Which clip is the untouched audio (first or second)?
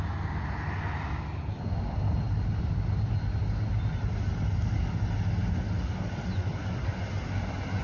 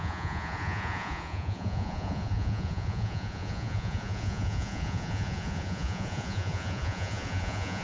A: first